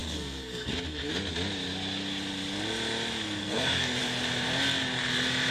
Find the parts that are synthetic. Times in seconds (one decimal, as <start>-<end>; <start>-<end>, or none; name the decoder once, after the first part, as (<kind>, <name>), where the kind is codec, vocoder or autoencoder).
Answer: 0.0-1.1 (codec, SNAC); 3.4-4.0